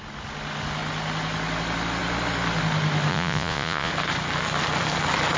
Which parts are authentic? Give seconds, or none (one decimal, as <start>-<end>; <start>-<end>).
0.0-3.1; 3.9-5.4

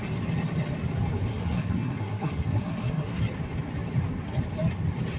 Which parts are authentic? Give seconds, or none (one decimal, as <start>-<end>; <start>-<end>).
0.0-1.3; 3.2-5.2